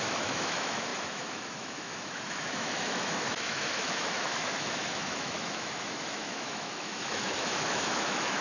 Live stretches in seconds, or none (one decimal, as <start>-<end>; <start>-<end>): none